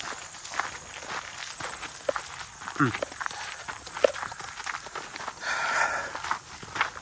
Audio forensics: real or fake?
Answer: real